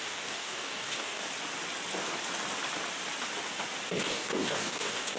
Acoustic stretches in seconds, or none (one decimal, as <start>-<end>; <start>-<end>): 1.2-4.1